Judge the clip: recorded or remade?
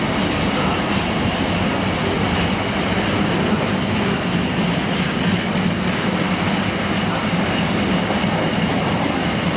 recorded